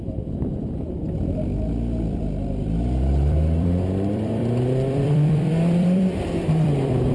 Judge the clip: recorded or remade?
remade